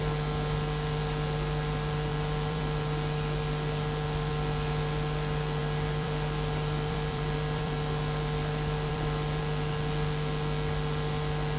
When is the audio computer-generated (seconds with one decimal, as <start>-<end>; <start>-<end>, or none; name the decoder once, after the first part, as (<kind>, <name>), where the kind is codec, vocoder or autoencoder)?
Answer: 2.1-4.3 (vocoder, BigVGAN v2); 5.6-9.4

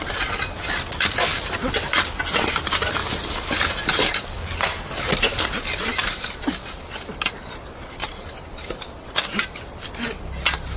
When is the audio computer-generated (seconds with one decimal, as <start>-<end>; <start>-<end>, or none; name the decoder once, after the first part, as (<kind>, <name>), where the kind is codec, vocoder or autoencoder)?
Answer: 3.0-4.2 (vocoder, BigVGAN v2); 5.9-6.5; 8.0-9.1